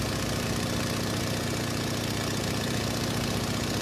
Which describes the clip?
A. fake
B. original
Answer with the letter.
B